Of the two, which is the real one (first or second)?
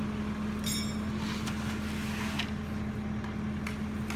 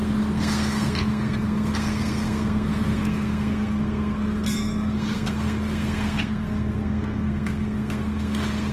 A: first